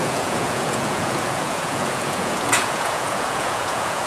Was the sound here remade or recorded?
remade